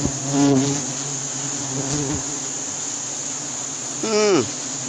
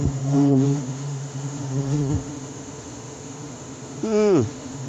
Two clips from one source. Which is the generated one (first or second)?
second